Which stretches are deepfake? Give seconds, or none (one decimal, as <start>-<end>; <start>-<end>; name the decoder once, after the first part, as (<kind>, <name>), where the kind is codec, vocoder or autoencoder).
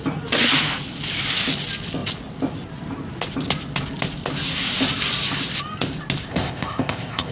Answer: 6.3-7.3 (codec, ZipCodec)